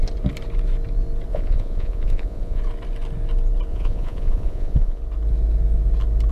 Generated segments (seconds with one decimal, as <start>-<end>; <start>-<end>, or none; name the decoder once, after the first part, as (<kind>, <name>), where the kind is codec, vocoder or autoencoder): 1.3-2.6 (vocoder, Vocos); 3.7-5.0